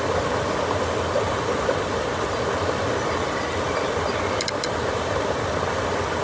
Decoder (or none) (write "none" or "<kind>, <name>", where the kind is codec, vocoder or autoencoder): none